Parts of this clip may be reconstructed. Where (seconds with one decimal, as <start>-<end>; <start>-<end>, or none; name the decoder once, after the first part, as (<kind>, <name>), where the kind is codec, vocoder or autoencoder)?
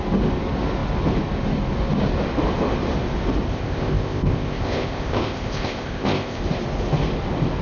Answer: 3.5-6.4 (codec, ZipCodec)